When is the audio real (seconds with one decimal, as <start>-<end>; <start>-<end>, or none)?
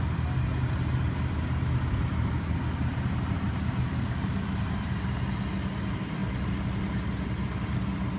0.0-8.2